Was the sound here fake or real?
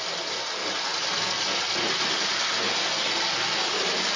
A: real